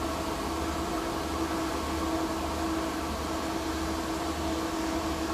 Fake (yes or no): no